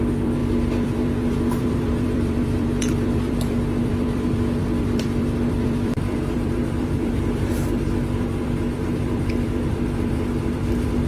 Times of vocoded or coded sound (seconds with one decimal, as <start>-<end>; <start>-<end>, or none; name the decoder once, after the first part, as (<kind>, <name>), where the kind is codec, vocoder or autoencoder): 0.0-11.1 (vocoder, BigVGAN v2)